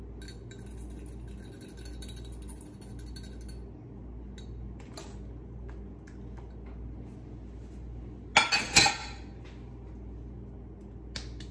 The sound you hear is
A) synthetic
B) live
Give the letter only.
B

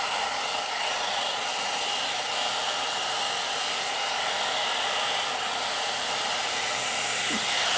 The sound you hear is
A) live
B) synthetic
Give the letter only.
B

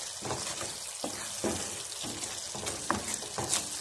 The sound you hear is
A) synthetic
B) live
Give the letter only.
B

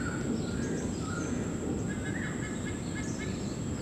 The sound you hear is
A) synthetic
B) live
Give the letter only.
B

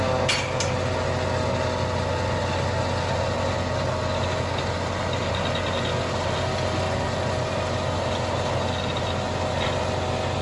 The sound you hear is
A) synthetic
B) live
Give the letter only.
B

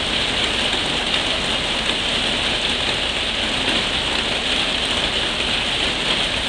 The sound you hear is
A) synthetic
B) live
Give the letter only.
B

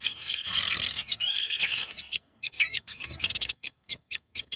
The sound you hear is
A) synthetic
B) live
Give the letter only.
A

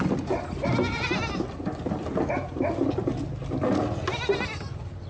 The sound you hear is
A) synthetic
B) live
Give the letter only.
B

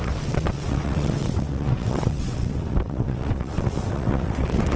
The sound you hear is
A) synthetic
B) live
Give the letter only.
A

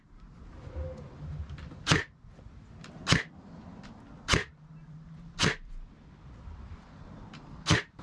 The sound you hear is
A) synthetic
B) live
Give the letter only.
B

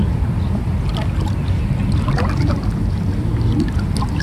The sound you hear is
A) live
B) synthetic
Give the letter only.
A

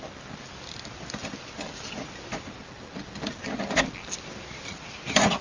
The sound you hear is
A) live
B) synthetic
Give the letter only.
A